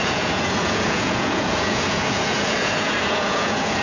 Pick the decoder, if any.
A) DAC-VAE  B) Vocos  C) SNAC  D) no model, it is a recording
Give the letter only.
B